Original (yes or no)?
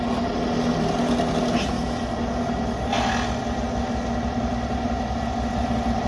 yes